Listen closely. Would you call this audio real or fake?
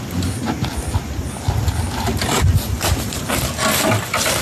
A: real